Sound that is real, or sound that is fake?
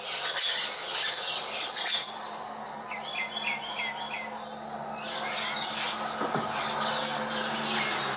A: real